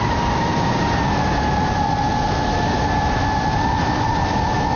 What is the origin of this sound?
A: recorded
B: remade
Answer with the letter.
A